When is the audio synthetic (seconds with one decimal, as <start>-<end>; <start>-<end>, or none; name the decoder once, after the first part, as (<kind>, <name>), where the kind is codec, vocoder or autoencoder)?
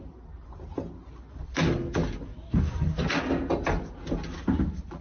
none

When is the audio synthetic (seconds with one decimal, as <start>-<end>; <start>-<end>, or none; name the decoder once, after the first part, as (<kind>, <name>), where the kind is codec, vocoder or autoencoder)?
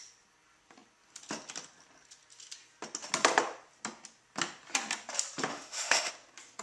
5.5-6.1 (autoencoder, DAC-VAE)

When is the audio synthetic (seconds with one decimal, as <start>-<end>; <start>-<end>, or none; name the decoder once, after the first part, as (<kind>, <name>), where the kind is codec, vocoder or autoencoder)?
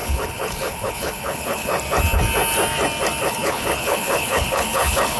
0.0-1.7 (codec, HILCodec); 3.2-5.2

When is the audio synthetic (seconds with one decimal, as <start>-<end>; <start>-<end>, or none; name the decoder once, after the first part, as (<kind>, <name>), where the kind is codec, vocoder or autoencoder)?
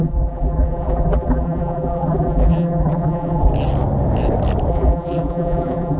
0.0-3.5 (vocoder, BigVGAN v2); 4.7-6.0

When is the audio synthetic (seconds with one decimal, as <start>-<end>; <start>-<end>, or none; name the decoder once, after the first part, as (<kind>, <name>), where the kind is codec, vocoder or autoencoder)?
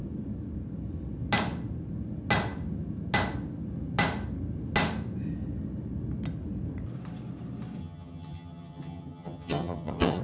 7.8-10.2 (vocoder, HiFi-GAN)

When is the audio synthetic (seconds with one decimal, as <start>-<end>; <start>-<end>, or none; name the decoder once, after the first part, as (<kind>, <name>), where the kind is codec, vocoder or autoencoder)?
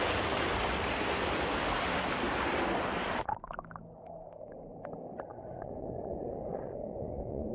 5.3-7.5 (vocoder, Vocos)